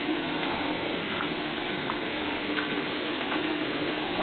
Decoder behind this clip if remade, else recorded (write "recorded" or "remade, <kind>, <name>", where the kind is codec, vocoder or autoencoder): remade, codec, SNAC